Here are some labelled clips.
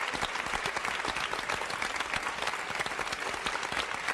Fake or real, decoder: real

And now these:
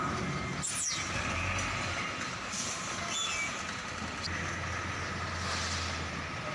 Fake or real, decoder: real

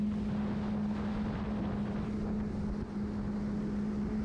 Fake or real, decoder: real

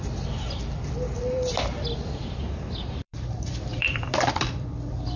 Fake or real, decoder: fake, vocoder, BigVGAN v2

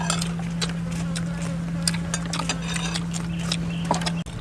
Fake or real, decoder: real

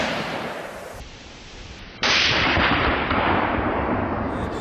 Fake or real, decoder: fake, vocoder, BigVGAN v2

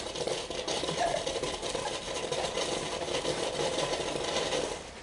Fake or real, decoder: fake, vocoder, BigVGAN v2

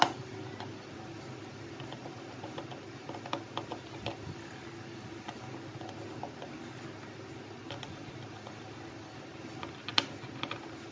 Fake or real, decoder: real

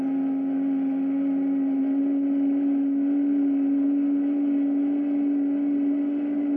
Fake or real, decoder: real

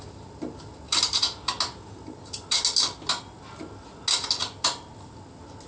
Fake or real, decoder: real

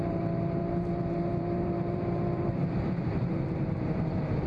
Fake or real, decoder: fake, vocoder, BigVGAN v2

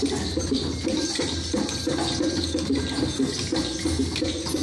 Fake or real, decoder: real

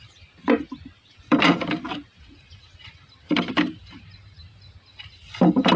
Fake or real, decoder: fake, vocoder, BigVGAN v2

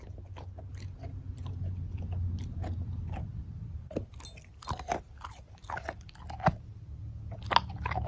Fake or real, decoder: real